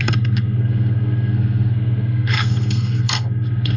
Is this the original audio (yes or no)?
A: no